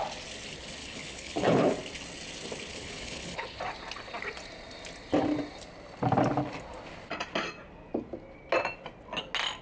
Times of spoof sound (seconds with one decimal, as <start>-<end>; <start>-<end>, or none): 0.8-1.7; 2.7-3.6